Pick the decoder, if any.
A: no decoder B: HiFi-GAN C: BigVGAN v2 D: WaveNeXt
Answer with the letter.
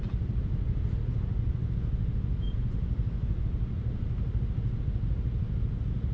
A